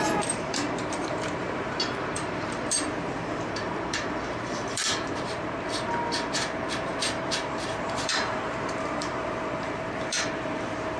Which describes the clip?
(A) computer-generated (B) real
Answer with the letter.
A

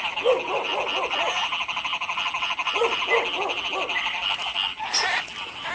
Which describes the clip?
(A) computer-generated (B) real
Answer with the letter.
B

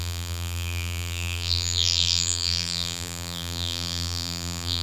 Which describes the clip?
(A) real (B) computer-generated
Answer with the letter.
B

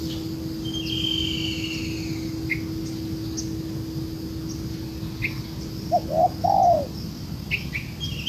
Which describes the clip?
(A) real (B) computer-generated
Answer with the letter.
A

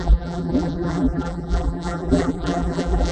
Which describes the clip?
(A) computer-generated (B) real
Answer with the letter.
A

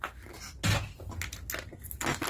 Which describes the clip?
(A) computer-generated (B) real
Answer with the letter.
B